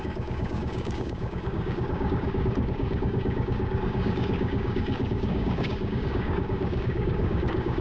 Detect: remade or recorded remade